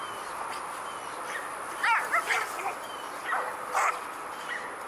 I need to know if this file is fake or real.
real